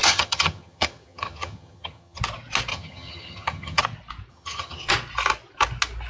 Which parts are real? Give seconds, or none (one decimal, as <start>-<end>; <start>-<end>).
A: 2.2-2.7; 3.8-4.3; 4.9-6.1